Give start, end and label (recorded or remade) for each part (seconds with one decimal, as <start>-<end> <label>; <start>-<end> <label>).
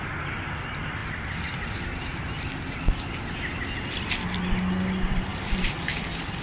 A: 0.0-1.0 remade; 1.0-4.4 recorded; 4.4-6.4 remade